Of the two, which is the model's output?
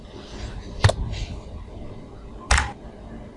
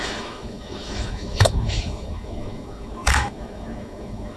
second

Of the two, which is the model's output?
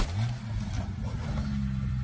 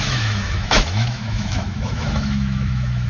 second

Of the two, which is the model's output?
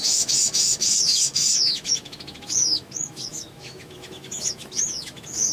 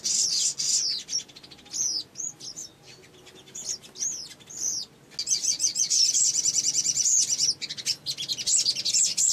first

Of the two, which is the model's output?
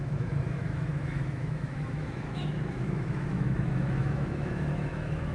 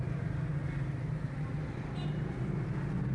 first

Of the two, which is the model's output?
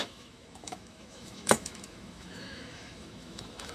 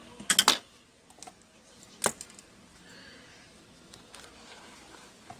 first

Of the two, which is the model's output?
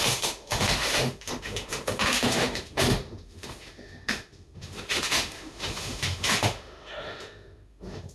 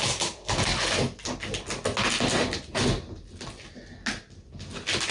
first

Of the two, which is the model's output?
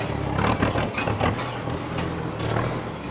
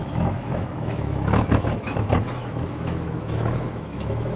second